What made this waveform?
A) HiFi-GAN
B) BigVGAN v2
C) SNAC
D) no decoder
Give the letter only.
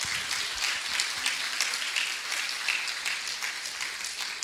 D